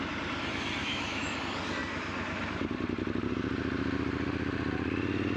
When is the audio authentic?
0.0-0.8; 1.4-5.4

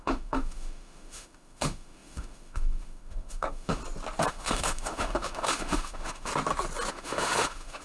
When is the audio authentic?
3.8-4.3; 6.3-6.9

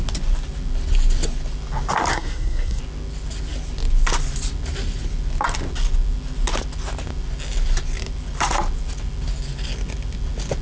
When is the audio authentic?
0.0-2.1; 2.8-10.6

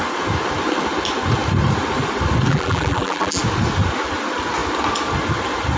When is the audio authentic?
0.0-2.5; 3.4-5.8

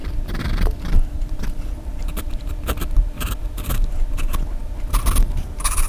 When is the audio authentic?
none

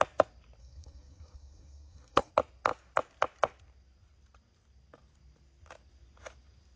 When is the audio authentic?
0.0-0.6; 2.3-6.8